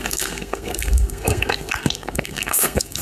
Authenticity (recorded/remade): remade